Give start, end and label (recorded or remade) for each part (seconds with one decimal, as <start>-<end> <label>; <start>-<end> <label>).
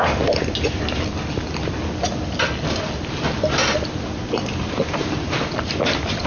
0.0-6.3 recorded